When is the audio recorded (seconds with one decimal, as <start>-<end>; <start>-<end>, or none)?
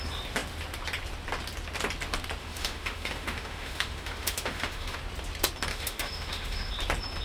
0.0-2.4; 5.0-5.7; 6.7-7.2